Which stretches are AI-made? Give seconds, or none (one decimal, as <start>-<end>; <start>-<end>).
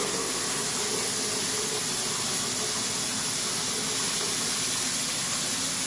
none